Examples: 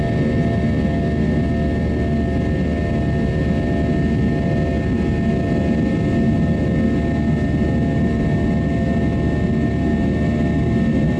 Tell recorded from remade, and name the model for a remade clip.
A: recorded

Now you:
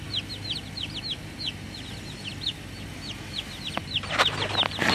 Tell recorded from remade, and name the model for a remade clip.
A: recorded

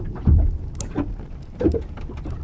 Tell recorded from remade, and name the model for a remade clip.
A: recorded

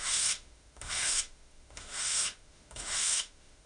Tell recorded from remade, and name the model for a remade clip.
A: remade, autoencoder, DAC-VAE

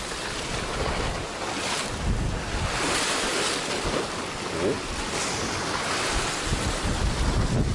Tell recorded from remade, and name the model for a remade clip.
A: recorded